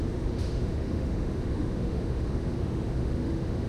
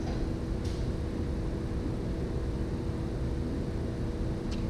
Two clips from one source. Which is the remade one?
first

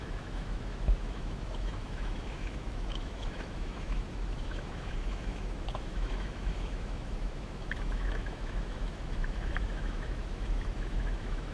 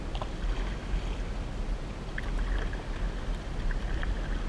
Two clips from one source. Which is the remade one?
first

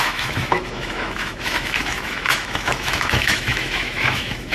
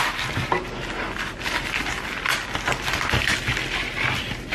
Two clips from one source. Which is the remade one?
first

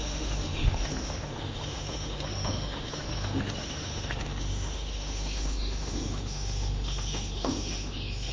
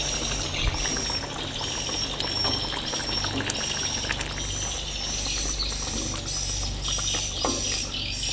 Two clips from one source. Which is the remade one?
first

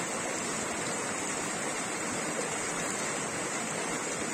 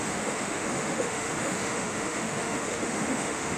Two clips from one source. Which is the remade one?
second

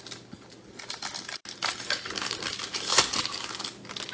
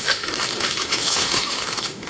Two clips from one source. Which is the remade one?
second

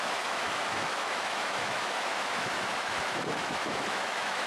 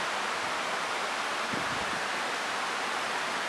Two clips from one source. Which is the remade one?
first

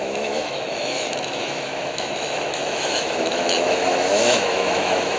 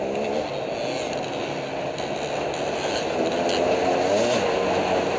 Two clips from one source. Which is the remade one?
first